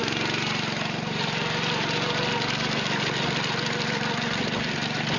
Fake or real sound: real